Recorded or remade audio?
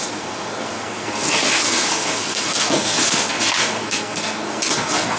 remade